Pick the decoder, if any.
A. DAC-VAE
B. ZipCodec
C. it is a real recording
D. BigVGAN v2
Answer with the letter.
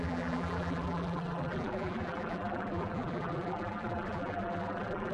D